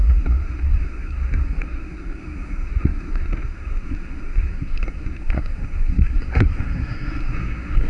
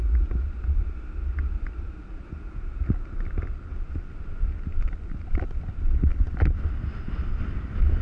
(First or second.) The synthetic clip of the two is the first